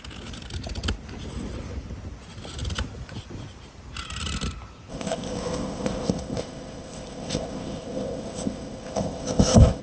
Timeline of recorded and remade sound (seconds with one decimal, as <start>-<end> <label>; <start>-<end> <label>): 0.0-4.9 recorded; 4.9-9.8 remade